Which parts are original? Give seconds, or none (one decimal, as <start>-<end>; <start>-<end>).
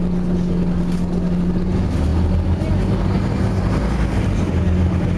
0.0-5.2